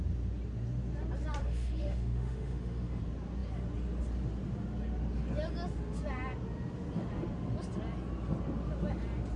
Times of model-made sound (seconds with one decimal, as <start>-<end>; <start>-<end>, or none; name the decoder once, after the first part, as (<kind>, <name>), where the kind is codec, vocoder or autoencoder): 1.4-3.0 (autoencoder, DAC-VAE)